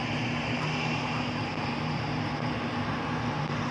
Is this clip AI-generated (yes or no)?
yes